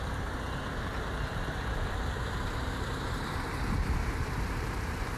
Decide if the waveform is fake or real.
fake